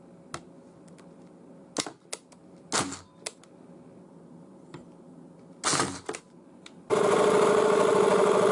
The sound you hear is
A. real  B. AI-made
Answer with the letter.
A